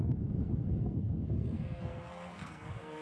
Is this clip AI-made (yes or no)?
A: yes